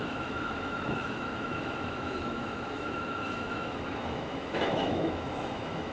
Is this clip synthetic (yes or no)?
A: yes